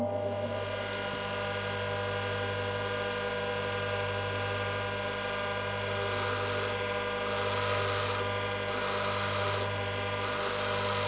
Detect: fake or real real